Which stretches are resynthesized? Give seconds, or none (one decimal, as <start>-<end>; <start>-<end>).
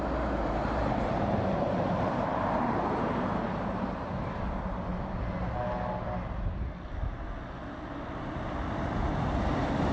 0.0-4.9; 8.9-9.9